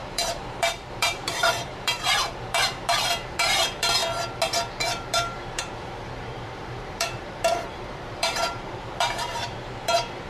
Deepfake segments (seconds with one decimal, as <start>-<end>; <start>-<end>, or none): 0.0-4.0; 4.7-10.3